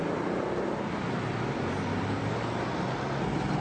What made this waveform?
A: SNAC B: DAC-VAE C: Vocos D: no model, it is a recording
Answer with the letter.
D